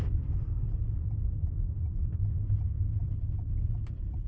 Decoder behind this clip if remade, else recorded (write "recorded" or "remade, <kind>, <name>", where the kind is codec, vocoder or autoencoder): recorded